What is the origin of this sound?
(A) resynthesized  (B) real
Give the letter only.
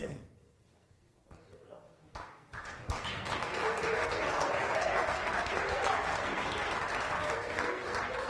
A